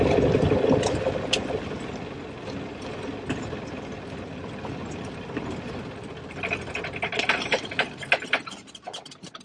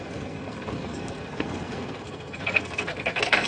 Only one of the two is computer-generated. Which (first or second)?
second